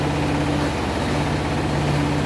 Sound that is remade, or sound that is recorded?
recorded